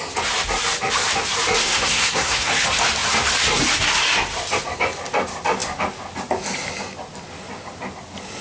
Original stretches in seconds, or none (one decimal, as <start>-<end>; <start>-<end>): 0.0-1.6; 2.5-8.4